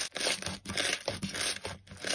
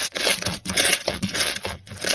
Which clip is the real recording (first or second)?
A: first